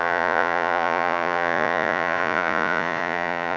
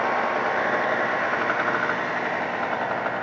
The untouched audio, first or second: second